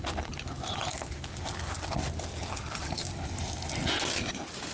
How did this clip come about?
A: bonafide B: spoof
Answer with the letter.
A